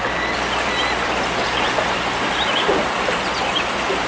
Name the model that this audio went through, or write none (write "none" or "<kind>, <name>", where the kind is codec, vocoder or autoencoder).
none